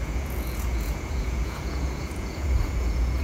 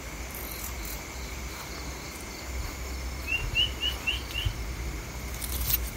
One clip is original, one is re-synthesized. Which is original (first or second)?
second